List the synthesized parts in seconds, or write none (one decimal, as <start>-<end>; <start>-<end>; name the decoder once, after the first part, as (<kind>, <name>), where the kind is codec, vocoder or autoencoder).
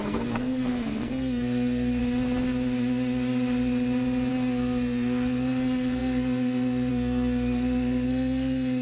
0.0-2.0 (codec, SNAC); 4.3-8.8